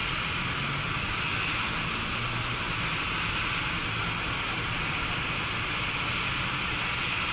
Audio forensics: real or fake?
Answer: real